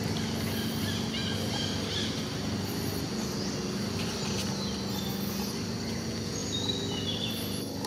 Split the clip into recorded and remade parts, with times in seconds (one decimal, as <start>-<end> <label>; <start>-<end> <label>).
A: 0.0-6.4 recorded; 6.4-7.2 remade; 7.2-7.9 recorded